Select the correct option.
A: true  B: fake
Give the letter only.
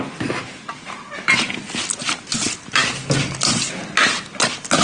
A